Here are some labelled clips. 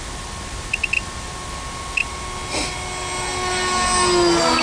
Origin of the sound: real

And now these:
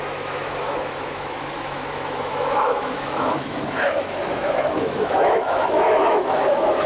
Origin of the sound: fake